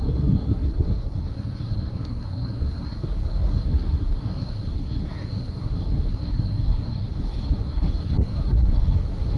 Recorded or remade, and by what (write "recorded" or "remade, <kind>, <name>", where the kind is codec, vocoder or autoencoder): remade, codec, SNAC